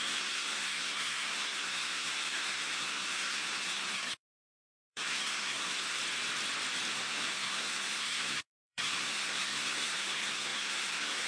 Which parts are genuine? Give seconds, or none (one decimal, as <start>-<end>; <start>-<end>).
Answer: 6.0-6.9